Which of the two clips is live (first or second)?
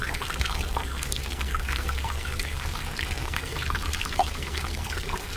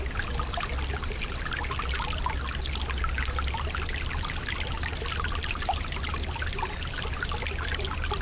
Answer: second